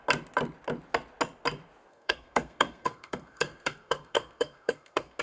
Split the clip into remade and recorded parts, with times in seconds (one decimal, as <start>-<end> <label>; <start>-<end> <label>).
0.0-1.9 recorded; 1.9-5.2 remade